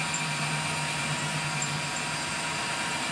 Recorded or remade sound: recorded